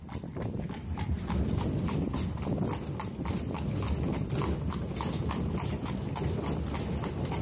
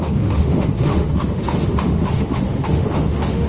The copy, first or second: second